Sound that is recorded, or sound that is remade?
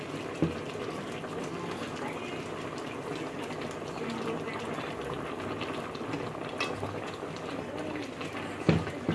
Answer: recorded